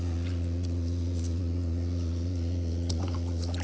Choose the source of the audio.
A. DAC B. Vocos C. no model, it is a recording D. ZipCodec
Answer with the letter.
B